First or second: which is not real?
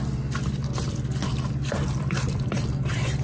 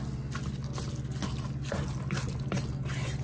first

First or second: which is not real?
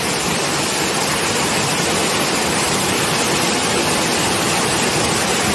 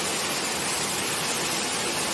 first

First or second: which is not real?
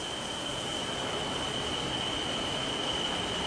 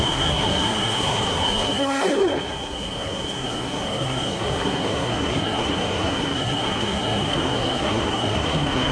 second